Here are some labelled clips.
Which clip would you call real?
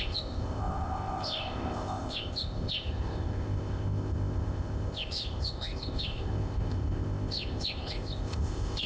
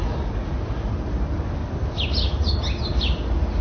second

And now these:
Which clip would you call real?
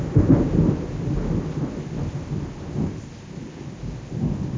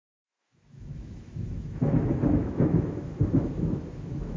first